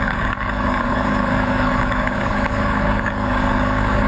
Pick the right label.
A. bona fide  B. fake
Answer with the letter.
B